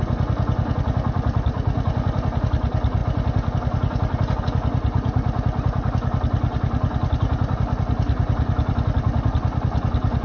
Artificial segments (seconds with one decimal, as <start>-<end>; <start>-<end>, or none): none